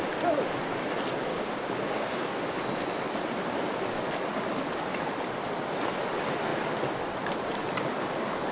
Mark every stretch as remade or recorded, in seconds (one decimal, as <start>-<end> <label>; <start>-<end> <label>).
0.0-1.3 recorded; 1.3-2.3 remade; 2.3-8.5 recorded